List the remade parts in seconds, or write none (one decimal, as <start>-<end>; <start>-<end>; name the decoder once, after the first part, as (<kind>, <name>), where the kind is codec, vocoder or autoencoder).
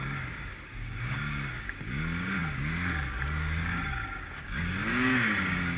0.0-5.8 (codec, DAC)